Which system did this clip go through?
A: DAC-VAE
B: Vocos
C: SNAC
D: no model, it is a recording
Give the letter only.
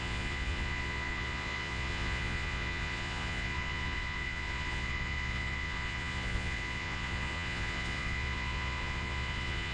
B